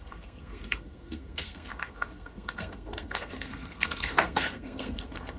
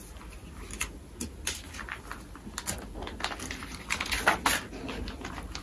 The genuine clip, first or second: second